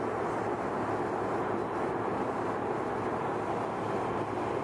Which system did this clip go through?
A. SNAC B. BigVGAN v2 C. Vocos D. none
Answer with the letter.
D